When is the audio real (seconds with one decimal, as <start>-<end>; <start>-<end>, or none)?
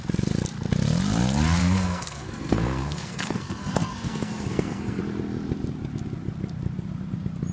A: 0.0-1.6; 5.0-7.5